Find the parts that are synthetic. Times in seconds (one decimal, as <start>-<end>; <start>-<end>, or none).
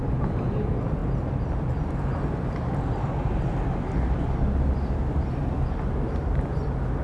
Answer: none